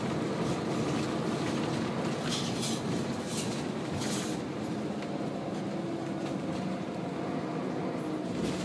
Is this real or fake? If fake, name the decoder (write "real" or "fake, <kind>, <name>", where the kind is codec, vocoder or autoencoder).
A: real